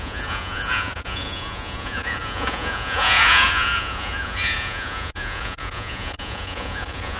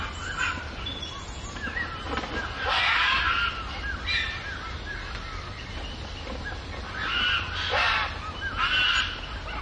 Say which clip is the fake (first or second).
first